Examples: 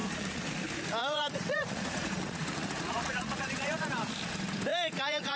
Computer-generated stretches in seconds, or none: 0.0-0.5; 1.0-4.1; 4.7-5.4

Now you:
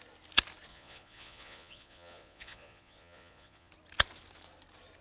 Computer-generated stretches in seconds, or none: 0.7-3.7

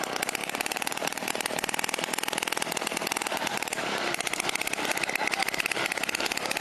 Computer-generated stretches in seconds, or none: 0.4-1.3; 3.3-4.2

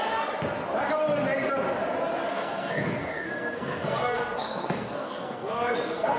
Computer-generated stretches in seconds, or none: 2.3-6.2